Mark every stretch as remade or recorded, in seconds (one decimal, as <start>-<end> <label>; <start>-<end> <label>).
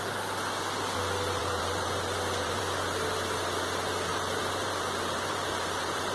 0.0-1.4 recorded; 1.4-2.6 remade; 2.6-4.1 recorded; 4.1-6.1 remade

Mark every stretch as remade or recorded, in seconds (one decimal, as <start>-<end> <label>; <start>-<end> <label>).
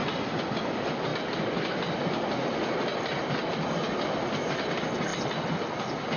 0.0-6.2 recorded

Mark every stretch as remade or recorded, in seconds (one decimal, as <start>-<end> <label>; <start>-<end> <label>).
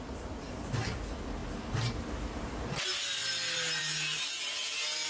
0.0-5.1 recorded